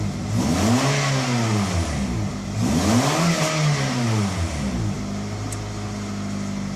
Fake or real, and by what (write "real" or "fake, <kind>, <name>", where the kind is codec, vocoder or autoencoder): real